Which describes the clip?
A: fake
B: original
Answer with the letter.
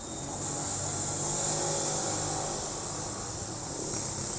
B